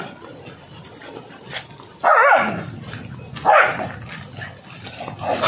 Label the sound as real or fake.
real